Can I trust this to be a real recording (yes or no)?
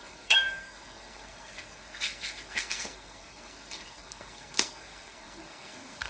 no